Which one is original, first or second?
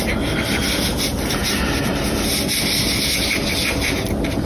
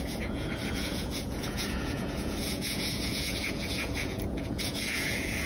first